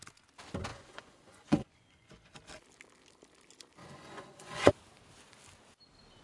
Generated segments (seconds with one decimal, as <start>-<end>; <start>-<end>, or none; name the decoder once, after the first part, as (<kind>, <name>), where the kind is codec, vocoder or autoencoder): 0.7-2.3 (vocoder, Vocos); 3.8-4.7